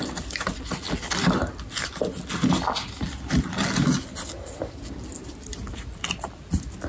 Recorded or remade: recorded